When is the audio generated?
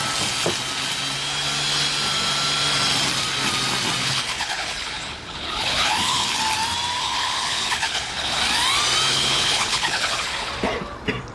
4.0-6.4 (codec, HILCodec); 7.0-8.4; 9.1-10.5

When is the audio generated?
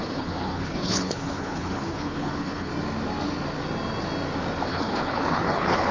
0.0-2.7 (codec, HILCodec); 4.7-5.9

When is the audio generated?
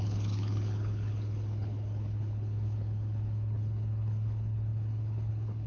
0.0-5.7 (codec, HILCodec)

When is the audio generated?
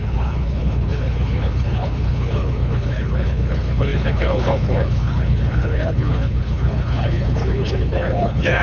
0.0-8.6 (codec, HILCodec)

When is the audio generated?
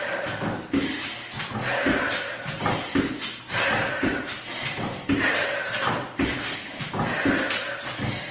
6.3-6.8 (codec, HILCodec)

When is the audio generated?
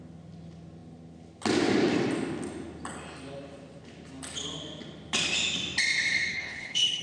6.3-7.0 (codec, HILCodec)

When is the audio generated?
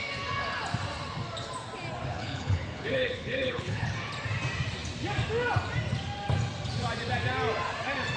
2.1-3.9 (codec, HILCodec)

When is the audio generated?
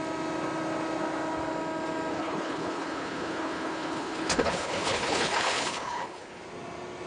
2.1-6.4 (codec, HILCodec)